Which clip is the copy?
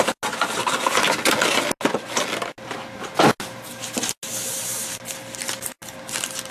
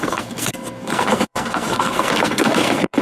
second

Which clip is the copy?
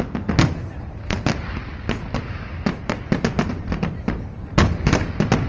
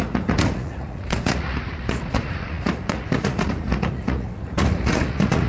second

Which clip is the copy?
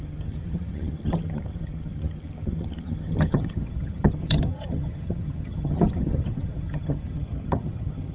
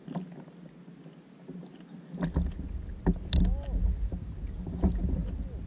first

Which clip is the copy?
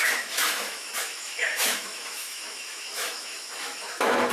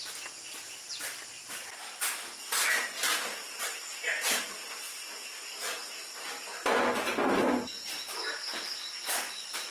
first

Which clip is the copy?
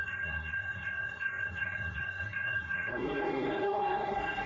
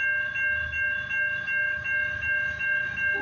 first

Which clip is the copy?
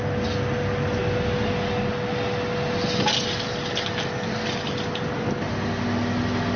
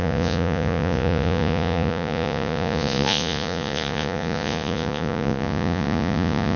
second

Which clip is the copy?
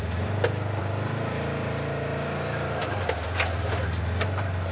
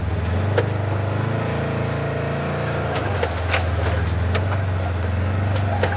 first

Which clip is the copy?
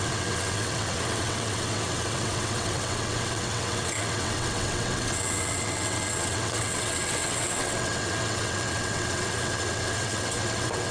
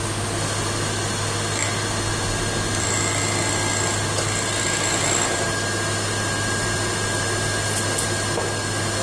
first